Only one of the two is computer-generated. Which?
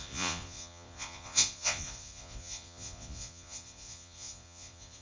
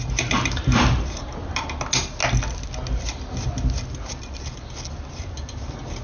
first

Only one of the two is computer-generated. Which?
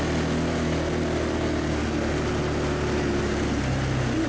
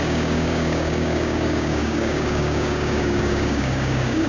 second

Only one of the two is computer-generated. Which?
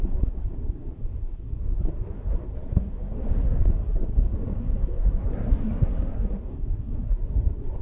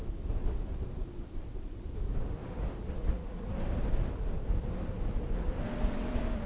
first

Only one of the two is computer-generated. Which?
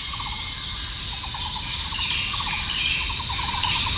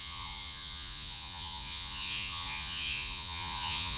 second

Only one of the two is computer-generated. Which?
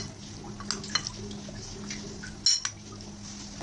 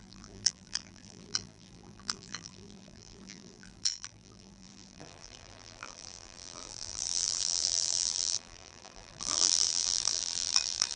second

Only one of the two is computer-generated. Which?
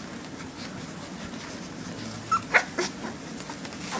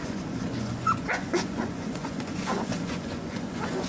second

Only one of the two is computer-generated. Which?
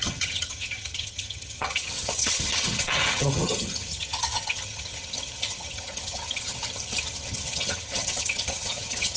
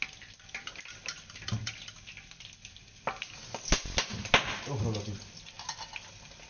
first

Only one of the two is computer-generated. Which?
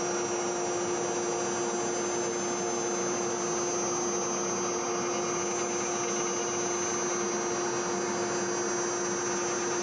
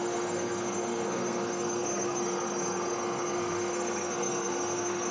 second